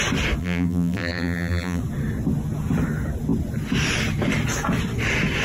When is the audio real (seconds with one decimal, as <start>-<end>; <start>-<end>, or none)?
0.0-0.4; 1.8-5.4